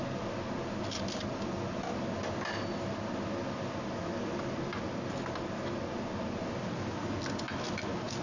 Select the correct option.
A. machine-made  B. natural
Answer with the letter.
B